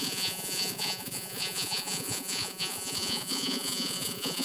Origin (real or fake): fake